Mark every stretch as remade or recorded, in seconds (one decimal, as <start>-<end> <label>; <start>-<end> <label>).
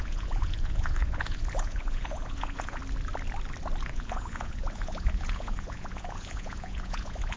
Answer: 0.0-2.8 remade; 2.8-3.9 recorded; 3.9-7.4 remade